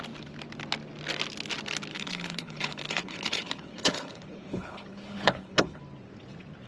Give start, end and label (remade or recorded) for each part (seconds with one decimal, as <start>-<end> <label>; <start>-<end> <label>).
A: 0.0-1.9 recorded; 1.9-5.8 remade; 5.8-6.7 recorded